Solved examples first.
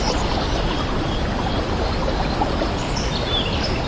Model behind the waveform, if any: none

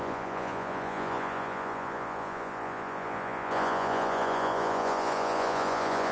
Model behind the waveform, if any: vocoder, Vocos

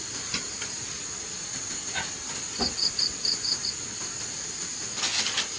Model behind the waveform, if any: none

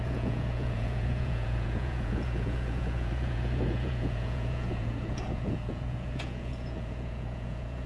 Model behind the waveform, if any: vocoder, Vocos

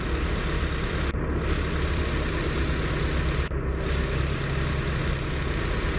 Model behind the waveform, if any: none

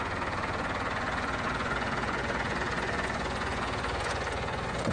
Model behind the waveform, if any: vocoder, Vocos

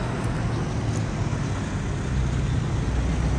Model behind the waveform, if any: none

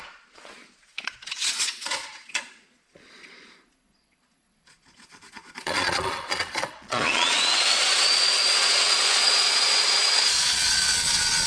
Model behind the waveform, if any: vocoder, Vocos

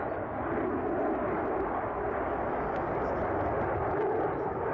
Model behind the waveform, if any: none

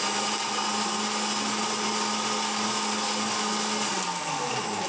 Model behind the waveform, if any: none